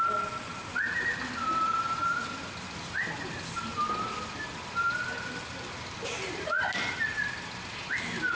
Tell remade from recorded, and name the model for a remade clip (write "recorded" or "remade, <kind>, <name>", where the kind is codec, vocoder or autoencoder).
recorded